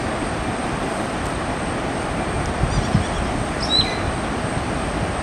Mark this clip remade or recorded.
recorded